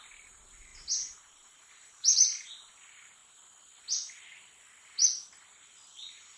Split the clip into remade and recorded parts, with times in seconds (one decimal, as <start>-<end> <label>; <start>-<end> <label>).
0.0-3.2 remade; 3.2-6.0 recorded; 6.0-6.4 remade